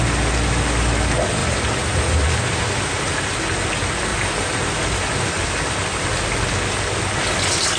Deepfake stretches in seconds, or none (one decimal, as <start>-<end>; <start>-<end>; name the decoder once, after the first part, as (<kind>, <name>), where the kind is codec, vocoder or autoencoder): 1.4-2.6 (vocoder, BigVGAN v2); 4.1-5.5